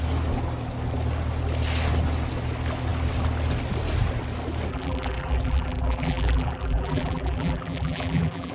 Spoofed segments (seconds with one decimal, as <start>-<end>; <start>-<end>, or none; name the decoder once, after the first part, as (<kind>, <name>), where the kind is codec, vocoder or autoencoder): 4.7-8.5 (vocoder, BigVGAN v2)